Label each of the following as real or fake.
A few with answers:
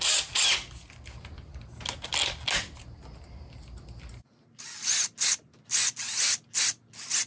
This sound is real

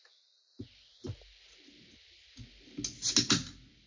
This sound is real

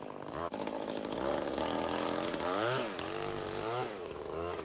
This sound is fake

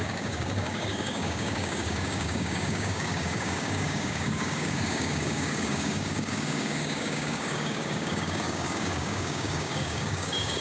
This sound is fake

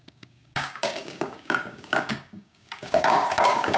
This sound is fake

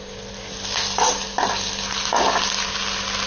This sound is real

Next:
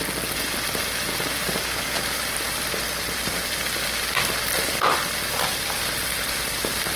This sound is real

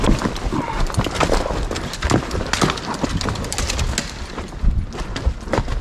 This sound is real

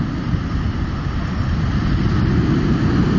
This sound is real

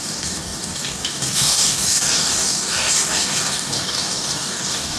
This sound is fake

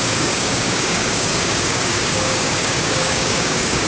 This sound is fake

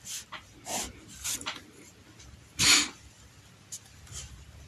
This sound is real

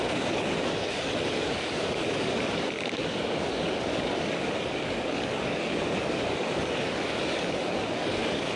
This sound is fake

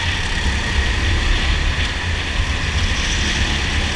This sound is real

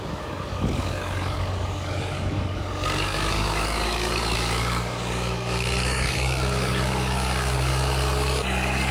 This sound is fake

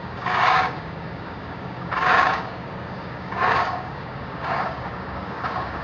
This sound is fake